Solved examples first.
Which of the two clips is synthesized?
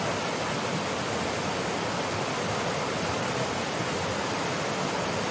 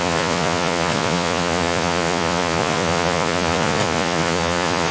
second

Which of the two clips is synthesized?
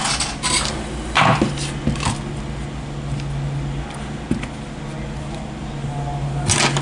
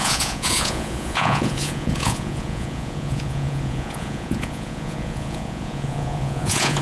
second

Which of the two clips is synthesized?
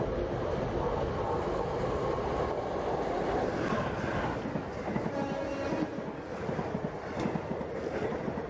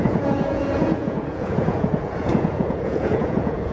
second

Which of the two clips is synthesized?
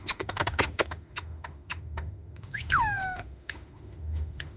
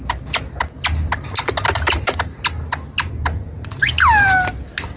first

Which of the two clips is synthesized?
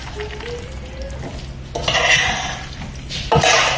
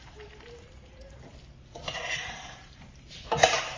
second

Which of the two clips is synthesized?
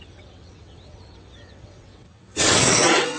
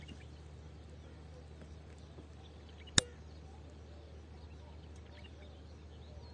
first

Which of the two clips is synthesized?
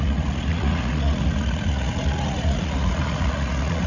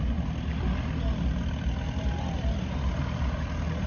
first